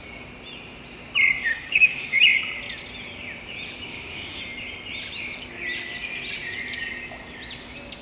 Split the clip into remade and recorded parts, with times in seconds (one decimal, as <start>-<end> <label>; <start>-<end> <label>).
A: 0.0-1.5 recorded; 1.5-2.2 remade; 2.2-3.9 recorded; 3.9-4.4 remade; 4.4-8.0 recorded